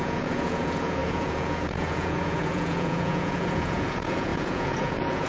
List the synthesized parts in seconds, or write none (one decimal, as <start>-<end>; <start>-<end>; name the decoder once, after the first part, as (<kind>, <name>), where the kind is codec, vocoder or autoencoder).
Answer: 0.0-5.3 (vocoder, Vocos)

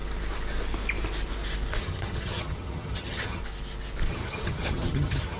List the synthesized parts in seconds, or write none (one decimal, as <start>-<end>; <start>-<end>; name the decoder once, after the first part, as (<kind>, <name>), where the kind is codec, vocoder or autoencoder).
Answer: 1.8-3.4 (vocoder, HiFi-GAN); 4.1-5.4